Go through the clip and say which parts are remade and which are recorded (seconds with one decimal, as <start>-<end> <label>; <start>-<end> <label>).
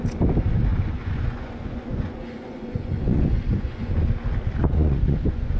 0.0-0.7 recorded; 0.7-4.1 remade; 4.1-4.6 recorded; 4.6-5.6 remade